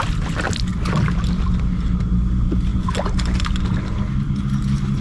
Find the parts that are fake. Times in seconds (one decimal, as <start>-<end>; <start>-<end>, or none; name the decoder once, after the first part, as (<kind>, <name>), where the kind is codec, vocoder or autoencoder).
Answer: none